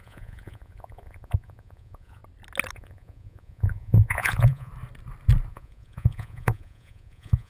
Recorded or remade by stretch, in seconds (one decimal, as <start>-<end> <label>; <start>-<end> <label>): 0.0-2.2 remade; 2.2-2.7 recorded; 2.7-4.7 remade; 4.7-5.5 recorded; 5.5-7.5 remade